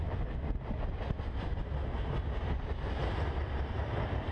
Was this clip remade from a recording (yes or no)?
no